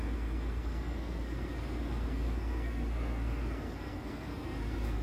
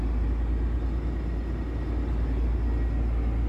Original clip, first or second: second